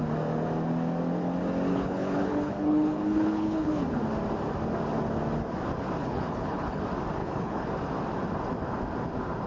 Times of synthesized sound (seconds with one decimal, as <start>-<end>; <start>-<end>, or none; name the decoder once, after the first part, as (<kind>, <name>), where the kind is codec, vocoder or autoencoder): 1.7-3.8 (codec, HILCodec); 6.0-6.8; 7.2-7.7